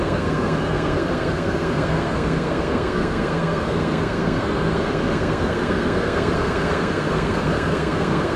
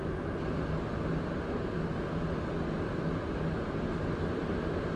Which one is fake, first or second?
first